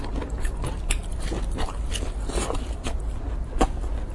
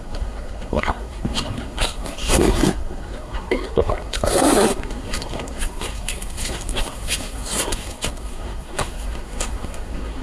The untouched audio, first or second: first